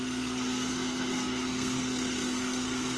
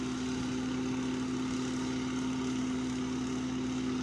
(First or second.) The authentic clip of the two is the second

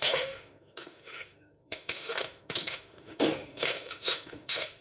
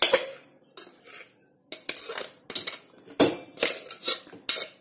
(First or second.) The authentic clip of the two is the second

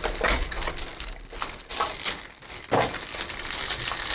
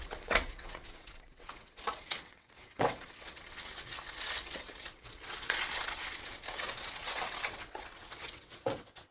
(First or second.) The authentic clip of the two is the first